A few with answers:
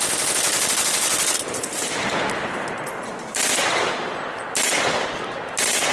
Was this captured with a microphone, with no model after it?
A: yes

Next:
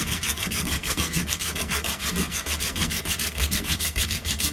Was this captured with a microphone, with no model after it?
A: no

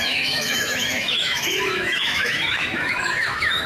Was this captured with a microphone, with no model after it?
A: no